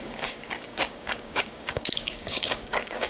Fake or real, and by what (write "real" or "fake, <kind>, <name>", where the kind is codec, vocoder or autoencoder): fake, codec, DAC